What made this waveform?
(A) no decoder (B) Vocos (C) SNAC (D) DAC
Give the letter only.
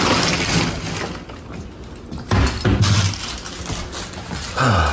A